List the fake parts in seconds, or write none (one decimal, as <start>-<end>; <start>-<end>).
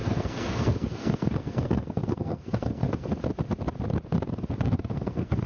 0.0-3.1; 4.6-5.5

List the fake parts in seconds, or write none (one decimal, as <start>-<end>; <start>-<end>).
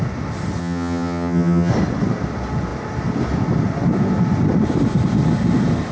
0.6-1.7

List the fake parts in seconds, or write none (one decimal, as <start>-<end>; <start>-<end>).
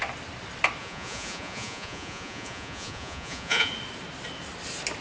0.8-3.7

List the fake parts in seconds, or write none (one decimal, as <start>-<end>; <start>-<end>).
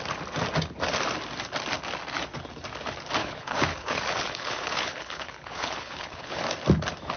3.2-6.4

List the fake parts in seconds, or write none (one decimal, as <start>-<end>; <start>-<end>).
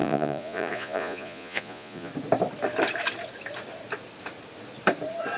0.0-2.1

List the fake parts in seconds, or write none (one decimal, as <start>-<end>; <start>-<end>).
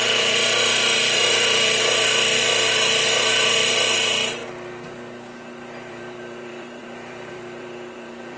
0.0-4.4; 5.9-8.4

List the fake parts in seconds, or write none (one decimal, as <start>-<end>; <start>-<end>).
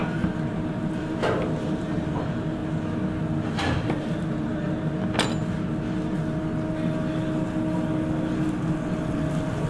0.0-2.6; 3.5-4.5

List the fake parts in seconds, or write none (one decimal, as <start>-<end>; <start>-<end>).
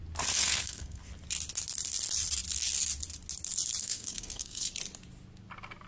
0.4-1.1; 3.8-4.7